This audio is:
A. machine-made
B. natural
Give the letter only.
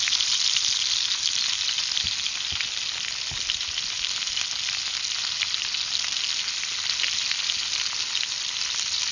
B